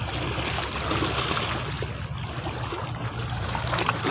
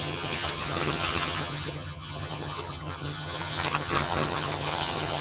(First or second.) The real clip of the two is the first